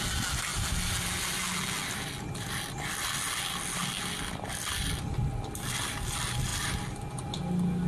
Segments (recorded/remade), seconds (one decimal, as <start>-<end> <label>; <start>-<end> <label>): 0.0-7.9 recorded